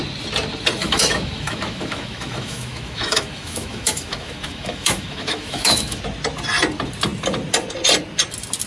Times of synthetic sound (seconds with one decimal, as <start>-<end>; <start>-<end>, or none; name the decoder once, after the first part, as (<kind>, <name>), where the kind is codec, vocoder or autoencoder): 0.8-6.0 (autoencoder, DAC-VAE)